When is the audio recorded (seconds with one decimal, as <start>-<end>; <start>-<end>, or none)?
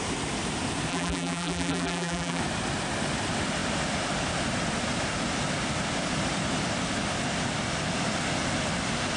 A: 0.0-0.9; 2.4-9.2